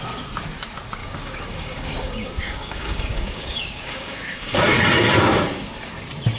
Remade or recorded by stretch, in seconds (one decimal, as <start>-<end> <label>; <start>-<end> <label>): 0.0-1.0 recorded; 1.0-4.8 remade; 4.8-6.4 recorded